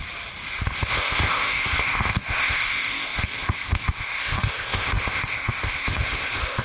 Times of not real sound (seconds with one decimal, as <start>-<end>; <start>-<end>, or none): 0.9-6.6